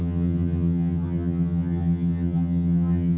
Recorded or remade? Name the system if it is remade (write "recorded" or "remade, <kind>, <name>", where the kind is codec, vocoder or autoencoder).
remade, vocoder, HiFi-GAN